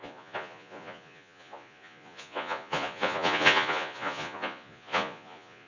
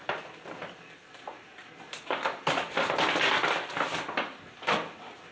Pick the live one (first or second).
second